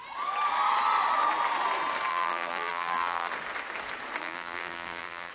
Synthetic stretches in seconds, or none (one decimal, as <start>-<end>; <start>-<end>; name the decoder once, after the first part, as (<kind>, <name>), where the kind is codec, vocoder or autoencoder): 2.1-3.3 (vocoder, BigVGAN v2); 4.2-5.3